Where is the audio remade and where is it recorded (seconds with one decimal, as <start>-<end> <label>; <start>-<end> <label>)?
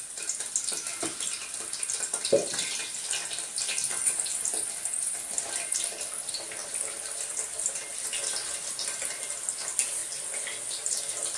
0.0-11.4 recorded